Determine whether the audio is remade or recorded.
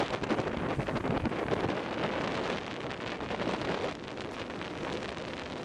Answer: recorded